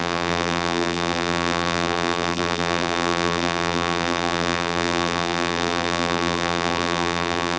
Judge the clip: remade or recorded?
remade